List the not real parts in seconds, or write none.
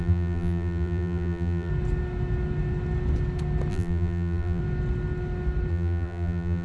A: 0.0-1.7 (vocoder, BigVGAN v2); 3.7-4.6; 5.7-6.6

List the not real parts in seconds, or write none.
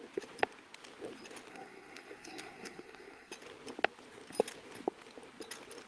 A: 1.5-3.3 (codec, SNAC)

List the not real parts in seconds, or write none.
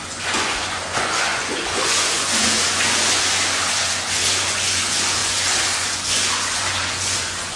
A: 0.0-7.6 (vocoder, Vocos)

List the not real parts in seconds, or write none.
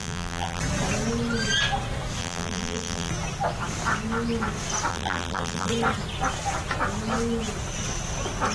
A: 0.0-0.6 (vocoder, BigVGAN v2); 2.2-3.1; 4.9-5.7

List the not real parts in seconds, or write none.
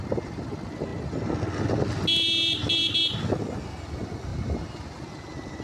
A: none